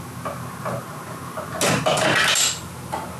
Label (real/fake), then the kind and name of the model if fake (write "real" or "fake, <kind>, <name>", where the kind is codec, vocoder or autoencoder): real